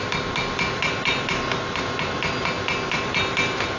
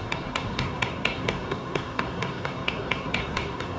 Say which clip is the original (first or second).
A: first